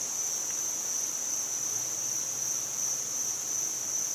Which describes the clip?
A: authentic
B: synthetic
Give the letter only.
A